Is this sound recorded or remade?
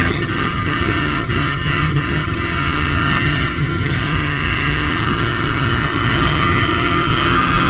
remade